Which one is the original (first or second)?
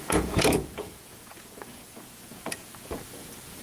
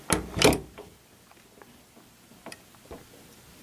second